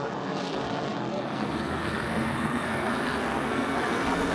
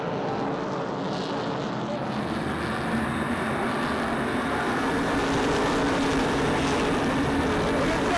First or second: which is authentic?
second